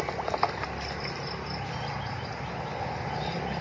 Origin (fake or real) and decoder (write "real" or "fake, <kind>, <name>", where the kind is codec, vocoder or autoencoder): real